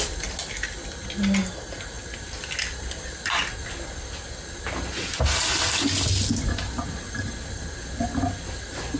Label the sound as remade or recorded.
recorded